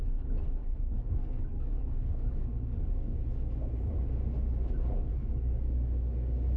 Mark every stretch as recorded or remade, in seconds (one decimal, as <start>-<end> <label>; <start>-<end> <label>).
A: 0.0-0.6 recorded; 0.6-3.3 remade; 3.3-5.1 recorded; 5.1-6.6 remade